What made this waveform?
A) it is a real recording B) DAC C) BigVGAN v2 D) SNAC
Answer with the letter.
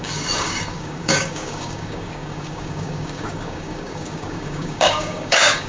B